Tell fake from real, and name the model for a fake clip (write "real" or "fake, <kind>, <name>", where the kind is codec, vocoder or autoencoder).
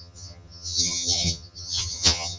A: fake, vocoder, HiFi-GAN